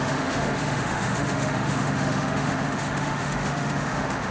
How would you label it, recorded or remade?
remade